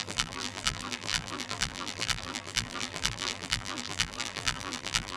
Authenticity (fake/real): fake